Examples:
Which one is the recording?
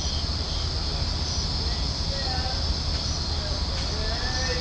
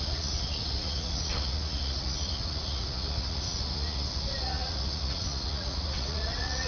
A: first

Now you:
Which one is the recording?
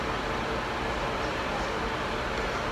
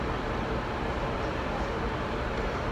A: first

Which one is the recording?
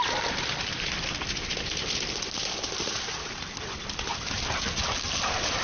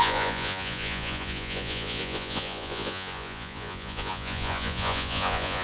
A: first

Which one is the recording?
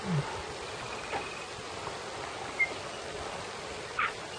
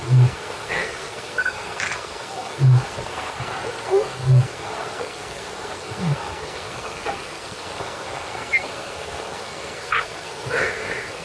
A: first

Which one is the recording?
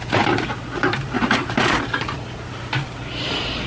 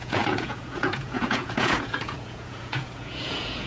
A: first